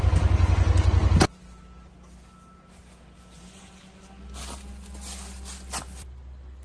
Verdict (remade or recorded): recorded